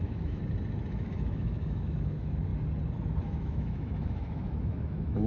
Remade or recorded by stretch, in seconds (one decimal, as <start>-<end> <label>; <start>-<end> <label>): 0.0-0.4 remade; 0.4-0.9 recorded; 0.9-2.5 remade; 2.5-3.2 recorded; 3.2-5.3 remade